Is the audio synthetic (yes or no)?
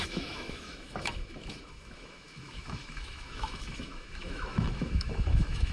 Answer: yes